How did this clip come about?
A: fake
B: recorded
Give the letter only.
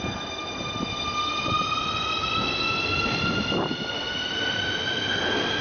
B